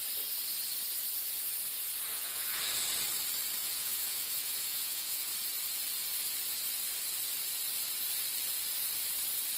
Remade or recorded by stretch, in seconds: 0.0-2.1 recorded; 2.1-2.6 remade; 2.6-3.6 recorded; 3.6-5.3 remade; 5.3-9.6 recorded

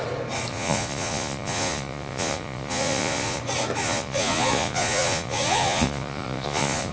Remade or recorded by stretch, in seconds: 0.0-0.5 recorded; 0.5-3.4 remade; 3.4-3.8 recorded; 3.8-6.9 remade

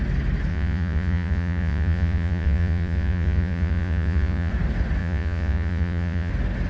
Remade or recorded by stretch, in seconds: 0.0-0.5 recorded; 0.5-4.5 remade; 4.5-5.0 recorded; 5.0-6.3 remade; 6.3-6.7 recorded

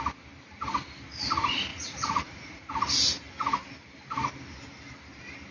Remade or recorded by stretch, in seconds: 0.0-1.7 recorded; 1.7-2.7 remade; 2.7-5.5 recorded

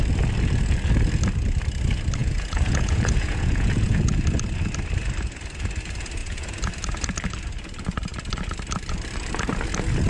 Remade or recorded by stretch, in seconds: 0.0-2.2 recorded; 2.2-4.1 remade; 4.1-6.2 recorded; 6.2-6.7 remade; 6.7-10.1 recorded

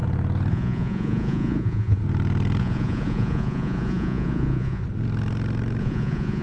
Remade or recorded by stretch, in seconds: 0.0-0.5 recorded; 0.5-2.0 remade; 2.0-2.6 recorded; 2.6-4.8 remade; 4.8-5.8 recorded; 5.8-6.4 remade

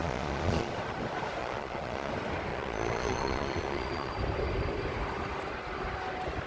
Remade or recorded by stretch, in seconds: 0.0-0.7 remade; 0.7-1.4 recorded; 1.4-2.1 remade; 2.1-2.5 recorded; 2.5-4.1 remade; 4.1-6.5 recorded